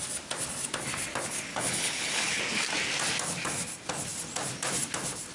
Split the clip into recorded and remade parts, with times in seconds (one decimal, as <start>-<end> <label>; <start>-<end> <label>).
0.0-1.5 recorded; 1.5-2.4 remade; 2.4-5.3 recorded